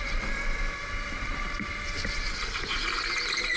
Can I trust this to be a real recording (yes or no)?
no